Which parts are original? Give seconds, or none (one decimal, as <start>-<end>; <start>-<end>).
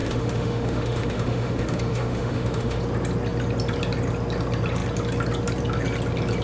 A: 2.8-6.4